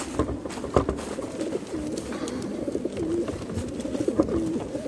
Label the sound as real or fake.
real